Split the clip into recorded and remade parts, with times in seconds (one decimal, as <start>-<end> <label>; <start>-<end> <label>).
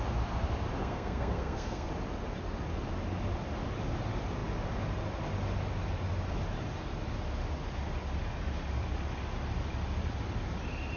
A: 0.0-0.8 recorded; 0.8-1.9 remade; 1.9-11.0 recorded